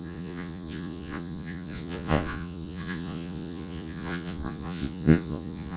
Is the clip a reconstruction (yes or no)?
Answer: yes